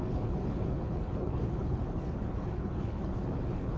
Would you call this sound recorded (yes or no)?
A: no